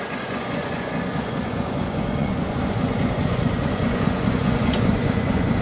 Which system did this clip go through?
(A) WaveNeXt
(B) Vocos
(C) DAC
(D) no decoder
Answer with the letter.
B